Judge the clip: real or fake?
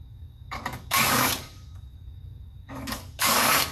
fake